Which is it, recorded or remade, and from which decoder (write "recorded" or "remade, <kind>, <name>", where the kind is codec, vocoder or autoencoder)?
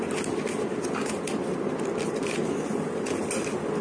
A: recorded